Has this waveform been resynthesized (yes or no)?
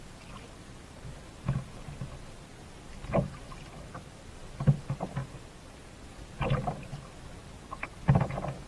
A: no